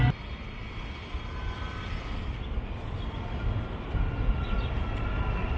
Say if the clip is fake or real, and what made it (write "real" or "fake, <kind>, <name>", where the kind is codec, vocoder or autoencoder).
real